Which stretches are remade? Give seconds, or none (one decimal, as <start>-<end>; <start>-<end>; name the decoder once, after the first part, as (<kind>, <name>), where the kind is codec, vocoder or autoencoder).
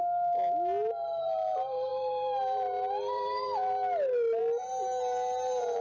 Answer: none